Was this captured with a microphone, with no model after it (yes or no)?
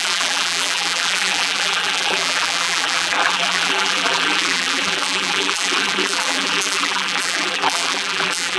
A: no